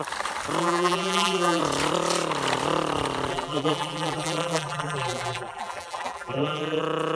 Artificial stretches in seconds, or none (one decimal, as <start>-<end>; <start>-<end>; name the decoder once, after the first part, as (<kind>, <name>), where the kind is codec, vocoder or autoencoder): 0.6-1.6 (vocoder, BigVGAN v2); 3.3-6.8